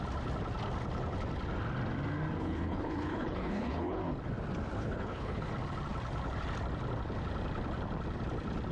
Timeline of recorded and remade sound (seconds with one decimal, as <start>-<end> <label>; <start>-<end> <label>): 0.0-2.4 recorded; 2.4-4.0 remade; 4.0-4.8 recorded; 4.8-5.5 remade; 5.5-8.7 recorded